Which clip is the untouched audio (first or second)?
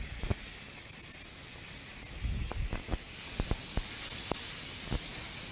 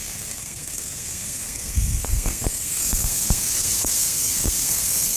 first